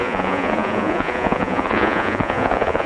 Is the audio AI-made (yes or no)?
yes